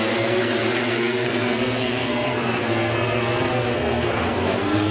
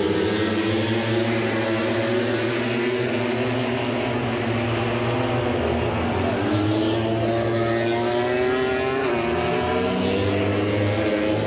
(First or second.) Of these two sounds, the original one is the second